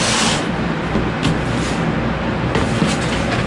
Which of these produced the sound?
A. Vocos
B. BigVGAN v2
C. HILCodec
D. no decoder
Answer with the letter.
D